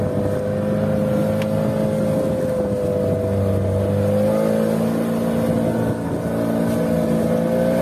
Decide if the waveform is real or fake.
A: real